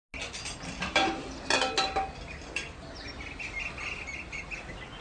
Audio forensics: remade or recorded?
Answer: recorded